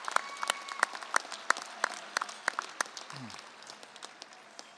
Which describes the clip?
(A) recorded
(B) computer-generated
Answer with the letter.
A